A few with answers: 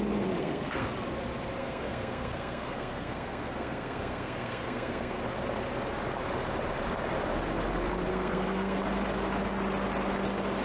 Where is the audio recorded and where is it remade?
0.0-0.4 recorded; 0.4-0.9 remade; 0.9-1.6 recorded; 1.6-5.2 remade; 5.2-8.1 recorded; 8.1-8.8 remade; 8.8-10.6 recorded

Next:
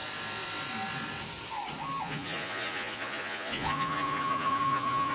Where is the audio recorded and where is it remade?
0.0-2.0 recorded; 2.0-5.1 remade

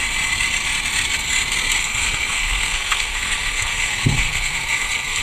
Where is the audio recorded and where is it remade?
0.0-1.8 recorded; 1.8-5.2 remade

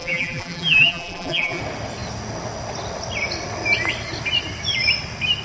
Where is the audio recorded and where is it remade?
0.0-1.6 remade; 1.6-5.4 recorded

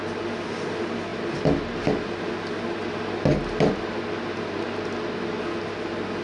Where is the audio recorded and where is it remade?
0.0-6.2 recorded